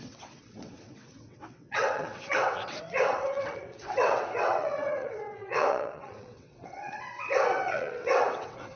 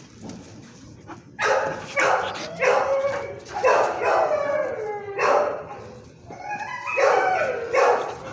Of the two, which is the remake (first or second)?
first